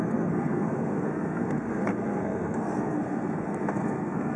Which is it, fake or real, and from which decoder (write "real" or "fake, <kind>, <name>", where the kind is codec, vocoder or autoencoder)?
fake, codec, SNAC